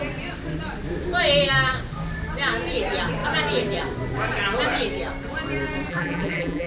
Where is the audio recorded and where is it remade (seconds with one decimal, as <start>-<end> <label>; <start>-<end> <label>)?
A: 0.0-5.9 recorded; 5.9-6.7 remade